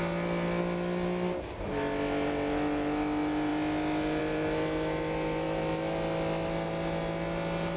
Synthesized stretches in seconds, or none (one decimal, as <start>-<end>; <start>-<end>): none